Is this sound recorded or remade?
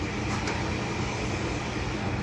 recorded